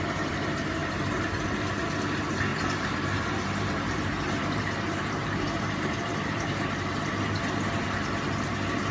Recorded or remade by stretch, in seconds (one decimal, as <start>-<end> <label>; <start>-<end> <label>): 0.0-0.8 recorded; 0.8-1.4 remade; 1.4-2.5 recorded; 2.5-7.4 remade; 7.4-8.9 recorded